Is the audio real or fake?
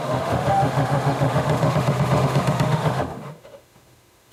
fake